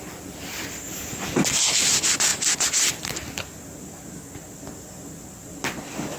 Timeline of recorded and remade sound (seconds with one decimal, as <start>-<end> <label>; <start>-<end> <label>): 0.0-6.2 recorded